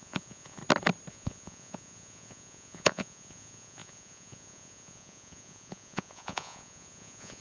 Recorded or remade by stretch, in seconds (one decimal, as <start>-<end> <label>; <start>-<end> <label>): 0.0-0.6 remade; 0.6-1.1 recorded; 1.1-7.4 remade